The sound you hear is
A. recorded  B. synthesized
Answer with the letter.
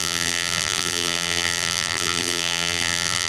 B